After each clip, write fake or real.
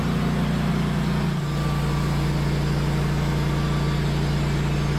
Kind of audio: real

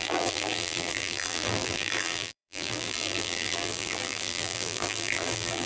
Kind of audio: fake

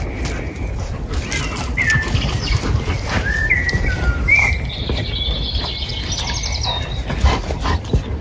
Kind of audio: real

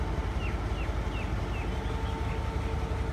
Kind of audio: real